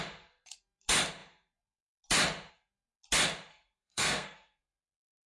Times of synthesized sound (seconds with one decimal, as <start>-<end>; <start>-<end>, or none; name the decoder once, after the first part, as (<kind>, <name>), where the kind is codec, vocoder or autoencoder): 3.5-5.3 (codec, SNAC)